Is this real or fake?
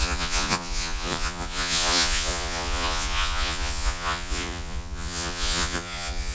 fake